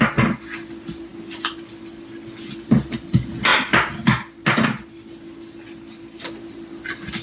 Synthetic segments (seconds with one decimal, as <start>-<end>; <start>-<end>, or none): none